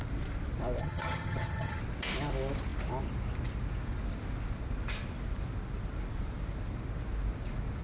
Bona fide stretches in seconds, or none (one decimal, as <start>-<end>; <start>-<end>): 0.0-0.8; 1.8-7.8